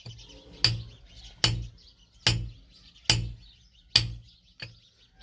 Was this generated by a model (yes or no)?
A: no